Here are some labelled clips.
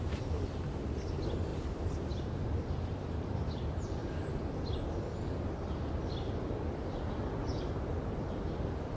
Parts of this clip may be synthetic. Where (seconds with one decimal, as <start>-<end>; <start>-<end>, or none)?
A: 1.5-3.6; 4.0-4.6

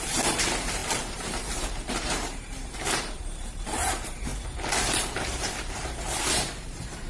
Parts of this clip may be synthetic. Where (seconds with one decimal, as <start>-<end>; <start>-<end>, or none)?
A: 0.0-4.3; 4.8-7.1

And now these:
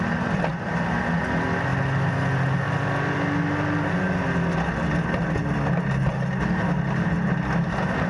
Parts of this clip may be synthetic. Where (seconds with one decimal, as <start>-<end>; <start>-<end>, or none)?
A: 0.5-1.1

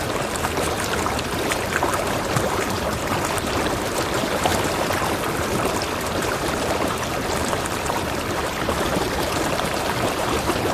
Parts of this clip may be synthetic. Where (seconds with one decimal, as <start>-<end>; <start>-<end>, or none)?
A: 0.0-4.5; 6.0-10.7

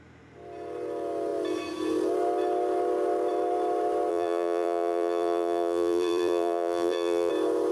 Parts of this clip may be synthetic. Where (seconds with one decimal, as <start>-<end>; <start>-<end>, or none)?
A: 4.1-7.3

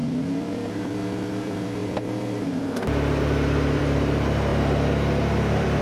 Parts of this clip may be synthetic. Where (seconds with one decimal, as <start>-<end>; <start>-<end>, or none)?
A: 1.3-4.5; 5.2-5.8